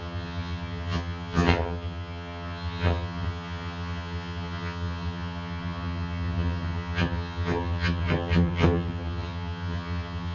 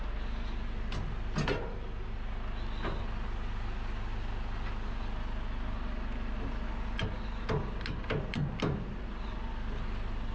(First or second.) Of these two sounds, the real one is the second